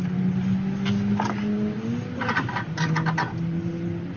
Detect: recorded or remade recorded